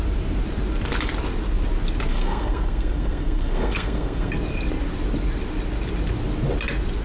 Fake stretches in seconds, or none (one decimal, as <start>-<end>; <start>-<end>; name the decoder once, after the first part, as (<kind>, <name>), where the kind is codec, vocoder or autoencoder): 2.1-4.3 (codec, SNAC)